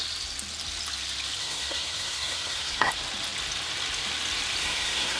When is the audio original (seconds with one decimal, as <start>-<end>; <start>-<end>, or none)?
0.0-1.4; 2.9-4.6